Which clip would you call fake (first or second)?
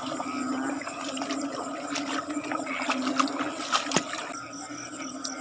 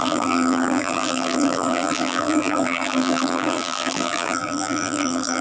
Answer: second